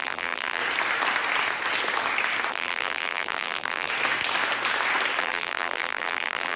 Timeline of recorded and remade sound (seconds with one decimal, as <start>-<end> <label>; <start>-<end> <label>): 0.0-0.6 remade; 0.6-2.5 recorded; 2.5-3.9 remade; 3.9-5.2 recorded; 5.2-6.6 remade